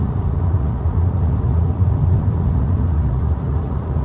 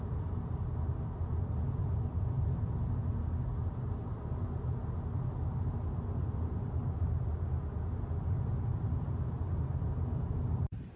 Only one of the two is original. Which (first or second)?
second